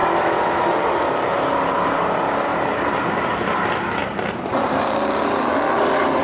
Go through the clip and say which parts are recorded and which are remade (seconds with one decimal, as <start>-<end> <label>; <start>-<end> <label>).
0.0-2.1 remade; 2.1-2.5 recorded; 2.5-3.6 remade; 3.6-4.0 recorded; 4.0-5.5 remade; 5.5-6.2 recorded